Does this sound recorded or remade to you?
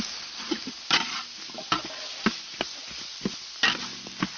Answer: recorded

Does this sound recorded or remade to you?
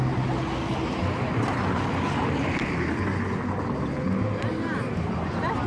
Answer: recorded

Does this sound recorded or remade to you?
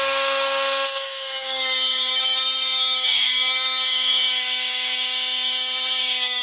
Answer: remade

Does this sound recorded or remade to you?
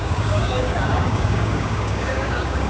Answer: remade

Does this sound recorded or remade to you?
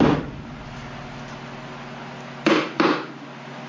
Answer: recorded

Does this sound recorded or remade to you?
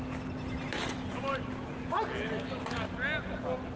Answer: recorded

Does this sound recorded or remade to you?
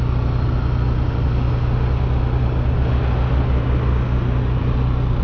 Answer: recorded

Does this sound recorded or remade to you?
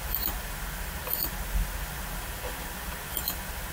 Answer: recorded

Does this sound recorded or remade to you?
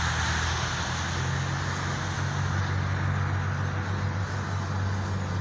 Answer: recorded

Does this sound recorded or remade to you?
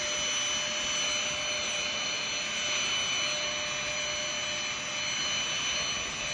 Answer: recorded